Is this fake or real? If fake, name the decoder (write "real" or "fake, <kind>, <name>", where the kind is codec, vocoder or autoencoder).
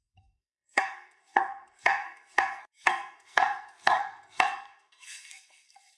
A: fake, codec, SNAC